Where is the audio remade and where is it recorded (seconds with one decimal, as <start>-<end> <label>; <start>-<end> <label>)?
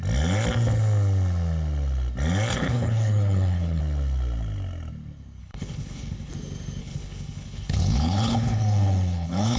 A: 0.0-2.5 recorded; 2.5-3.8 remade; 3.8-5.4 recorded; 5.4-6.3 remade; 6.3-6.8 recorded; 6.8-9.6 remade